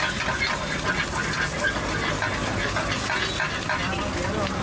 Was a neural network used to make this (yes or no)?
no